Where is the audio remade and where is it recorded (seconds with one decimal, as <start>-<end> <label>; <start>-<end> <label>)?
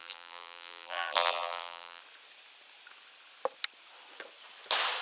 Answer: 0.0-2.0 remade; 2.0-5.0 recorded